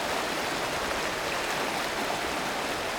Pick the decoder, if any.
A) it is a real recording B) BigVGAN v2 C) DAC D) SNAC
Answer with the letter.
A